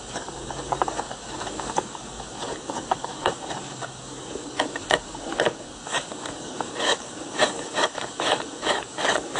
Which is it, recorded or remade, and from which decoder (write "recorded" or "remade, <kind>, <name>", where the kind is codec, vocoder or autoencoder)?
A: remade, codec, DAC